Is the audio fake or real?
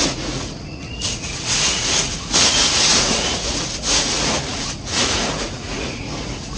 fake